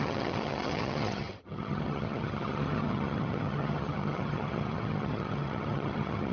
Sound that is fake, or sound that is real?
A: fake